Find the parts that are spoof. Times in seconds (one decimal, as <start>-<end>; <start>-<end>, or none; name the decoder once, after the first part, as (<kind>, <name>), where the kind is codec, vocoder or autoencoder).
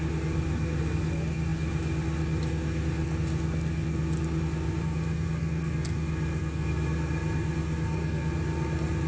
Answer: none